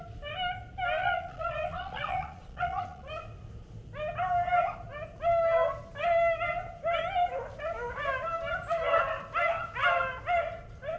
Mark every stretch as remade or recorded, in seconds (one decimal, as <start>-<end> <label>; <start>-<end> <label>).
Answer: 0.0-1.0 recorded; 1.0-3.1 remade; 3.1-11.0 recorded